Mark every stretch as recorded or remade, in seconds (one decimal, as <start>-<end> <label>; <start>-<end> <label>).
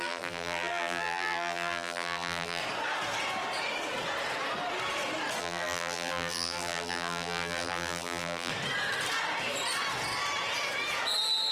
0.0-2.6 remade; 2.6-5.4 recorded; 5.4-8.5 remade; 8.5-11.5 recorded